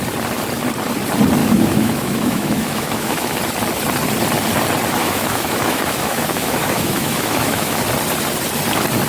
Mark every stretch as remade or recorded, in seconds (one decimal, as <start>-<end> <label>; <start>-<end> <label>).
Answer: 0.0-1.4 recorded; 1.4-3.4 remade; 3.4-5.0 recorded; 5.0-7.8 remade; 7.8-9.1 recorded